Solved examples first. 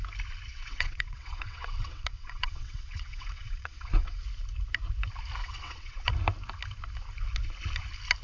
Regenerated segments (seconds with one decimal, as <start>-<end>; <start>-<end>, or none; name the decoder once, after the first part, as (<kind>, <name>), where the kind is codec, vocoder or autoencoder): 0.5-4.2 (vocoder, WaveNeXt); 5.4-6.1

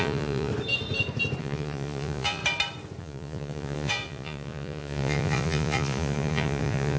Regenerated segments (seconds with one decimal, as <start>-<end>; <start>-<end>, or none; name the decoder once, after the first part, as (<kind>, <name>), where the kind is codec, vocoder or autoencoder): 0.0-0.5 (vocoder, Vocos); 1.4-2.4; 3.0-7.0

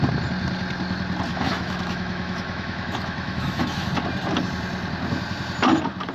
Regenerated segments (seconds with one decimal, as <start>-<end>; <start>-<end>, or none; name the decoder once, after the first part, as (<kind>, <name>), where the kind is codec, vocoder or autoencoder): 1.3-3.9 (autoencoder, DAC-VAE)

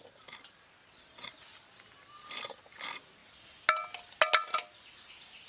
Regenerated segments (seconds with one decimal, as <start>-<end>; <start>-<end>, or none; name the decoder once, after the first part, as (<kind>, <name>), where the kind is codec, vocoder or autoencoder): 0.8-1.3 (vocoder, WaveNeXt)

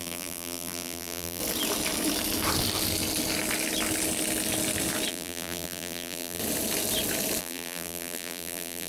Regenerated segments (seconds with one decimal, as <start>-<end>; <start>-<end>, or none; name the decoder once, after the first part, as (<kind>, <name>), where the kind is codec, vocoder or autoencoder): 0.0-1.4 (vocoder, BigVGAN v2); 5.1-6.4; 7.4-8.9